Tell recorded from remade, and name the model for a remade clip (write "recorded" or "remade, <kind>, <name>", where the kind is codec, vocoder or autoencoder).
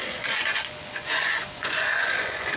remade, vocoder, Vocos